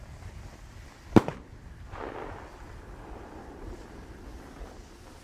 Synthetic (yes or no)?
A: no